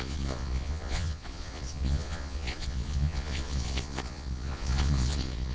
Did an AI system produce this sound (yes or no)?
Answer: yes